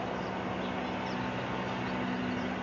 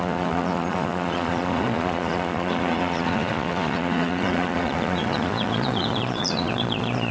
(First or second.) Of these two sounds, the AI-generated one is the second